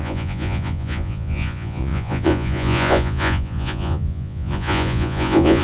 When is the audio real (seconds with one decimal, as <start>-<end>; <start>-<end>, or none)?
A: none